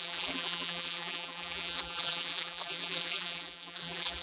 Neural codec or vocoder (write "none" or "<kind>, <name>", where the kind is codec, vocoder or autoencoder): vocoder, BigVGAN v2